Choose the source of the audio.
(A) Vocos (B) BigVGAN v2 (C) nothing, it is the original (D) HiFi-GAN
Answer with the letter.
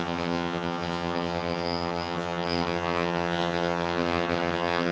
D